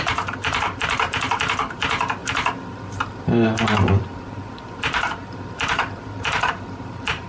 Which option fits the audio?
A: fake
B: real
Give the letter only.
A